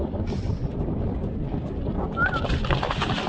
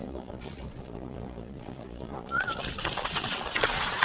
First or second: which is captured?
first